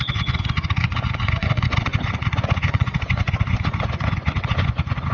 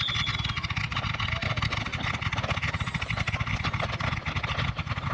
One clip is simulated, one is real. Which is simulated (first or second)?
first